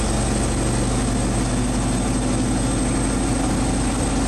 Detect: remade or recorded recorded